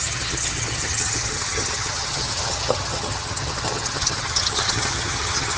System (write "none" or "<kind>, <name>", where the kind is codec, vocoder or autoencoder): vocoder, HiFi-GAN